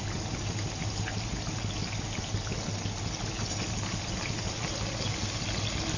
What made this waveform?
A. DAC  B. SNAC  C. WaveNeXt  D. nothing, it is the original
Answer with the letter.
D